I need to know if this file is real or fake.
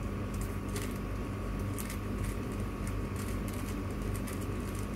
real